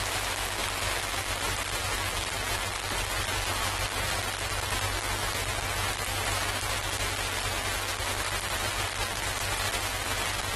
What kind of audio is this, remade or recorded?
recorded